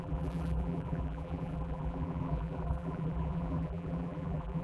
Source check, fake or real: fake